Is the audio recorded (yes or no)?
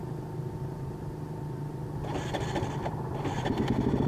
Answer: yes